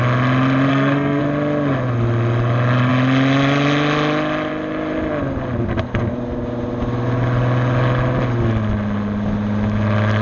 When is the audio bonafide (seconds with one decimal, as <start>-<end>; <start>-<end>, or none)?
0.0-0.7; 1.2-10.2